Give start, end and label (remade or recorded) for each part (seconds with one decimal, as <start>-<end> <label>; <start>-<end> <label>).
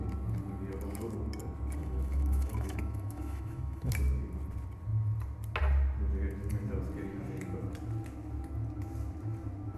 0.0-1.8 recorded; 1.8-3.9 remade; 3.9-9.8 recorded